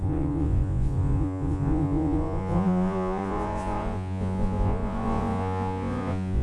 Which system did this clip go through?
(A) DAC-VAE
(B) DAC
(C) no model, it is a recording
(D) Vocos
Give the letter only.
D